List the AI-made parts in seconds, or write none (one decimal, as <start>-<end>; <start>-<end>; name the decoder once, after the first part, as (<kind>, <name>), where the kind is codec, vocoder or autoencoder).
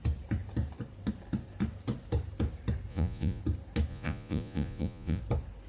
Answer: 2.9-3.4 (vocoder, Vocos); 3.9-5.2